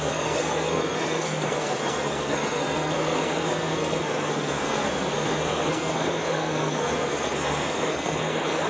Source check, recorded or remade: remade